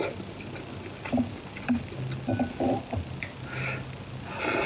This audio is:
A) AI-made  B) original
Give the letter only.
B